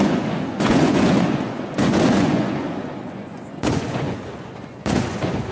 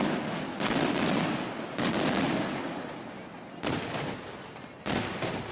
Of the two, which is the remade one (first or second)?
first